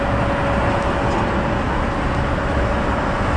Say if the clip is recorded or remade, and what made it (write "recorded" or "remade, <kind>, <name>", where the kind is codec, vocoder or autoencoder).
recorded